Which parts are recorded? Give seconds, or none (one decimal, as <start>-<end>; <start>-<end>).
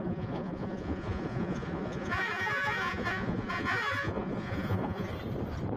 5.1-5.8